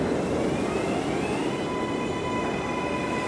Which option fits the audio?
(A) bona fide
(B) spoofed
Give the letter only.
A